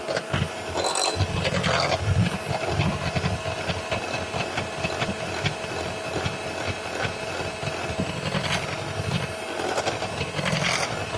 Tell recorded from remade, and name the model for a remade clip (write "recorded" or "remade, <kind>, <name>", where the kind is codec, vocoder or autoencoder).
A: recorded